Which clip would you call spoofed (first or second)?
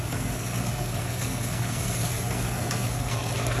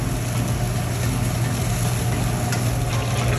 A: first